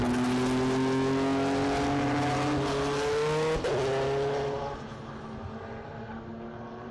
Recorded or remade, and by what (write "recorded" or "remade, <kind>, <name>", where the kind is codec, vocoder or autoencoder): recorded